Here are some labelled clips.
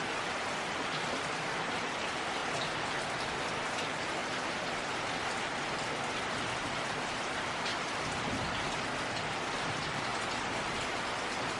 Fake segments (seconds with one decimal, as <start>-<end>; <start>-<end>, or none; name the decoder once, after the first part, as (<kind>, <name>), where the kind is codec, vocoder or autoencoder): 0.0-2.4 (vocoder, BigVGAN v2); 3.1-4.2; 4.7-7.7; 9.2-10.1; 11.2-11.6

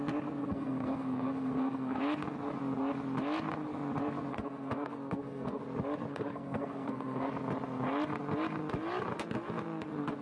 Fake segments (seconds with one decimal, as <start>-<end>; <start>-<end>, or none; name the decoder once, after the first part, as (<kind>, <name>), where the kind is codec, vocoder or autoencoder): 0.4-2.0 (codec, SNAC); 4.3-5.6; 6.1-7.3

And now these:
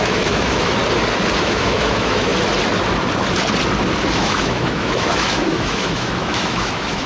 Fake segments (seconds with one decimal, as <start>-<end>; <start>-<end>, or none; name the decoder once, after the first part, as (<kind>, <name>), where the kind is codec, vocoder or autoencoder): 0.0-0.8 (autoencoder, DAC-VAE); 1.4-2.3; 4.1-7.1

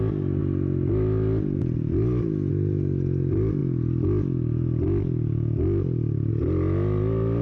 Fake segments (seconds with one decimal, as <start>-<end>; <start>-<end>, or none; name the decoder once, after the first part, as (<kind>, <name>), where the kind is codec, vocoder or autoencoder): none